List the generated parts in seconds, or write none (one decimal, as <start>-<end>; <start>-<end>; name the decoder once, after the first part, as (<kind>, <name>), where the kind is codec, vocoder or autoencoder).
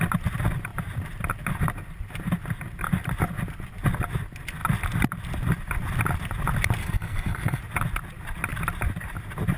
6.8-7.6 (codec, SNAC)